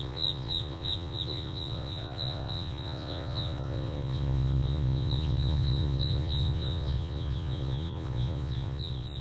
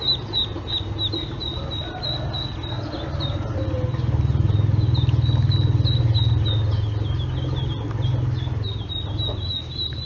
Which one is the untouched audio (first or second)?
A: second